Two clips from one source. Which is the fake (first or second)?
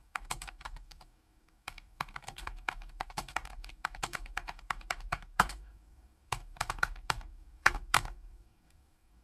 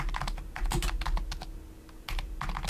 first